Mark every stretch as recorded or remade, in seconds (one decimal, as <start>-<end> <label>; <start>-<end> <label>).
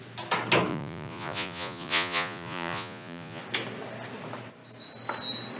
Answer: 0.0-0.7 recorded; 0.7-3.4 remade; 3.4-5.6 recorded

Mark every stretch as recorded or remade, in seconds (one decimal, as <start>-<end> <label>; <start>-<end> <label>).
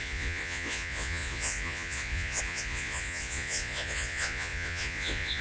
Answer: 0.0-5.4 remade